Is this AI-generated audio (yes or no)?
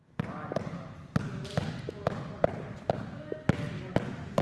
no